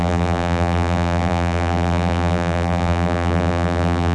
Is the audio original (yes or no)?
no